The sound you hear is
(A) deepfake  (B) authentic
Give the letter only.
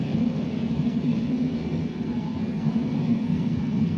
A